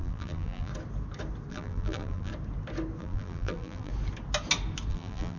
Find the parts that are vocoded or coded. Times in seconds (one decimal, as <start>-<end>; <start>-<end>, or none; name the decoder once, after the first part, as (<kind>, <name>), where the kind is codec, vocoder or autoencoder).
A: 0.0-0.7 (vocoder, BigVGAN v2); 1.5-2.3; 3.0-3.9; 4.9-5.4